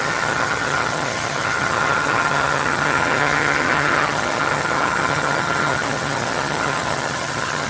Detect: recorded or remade remade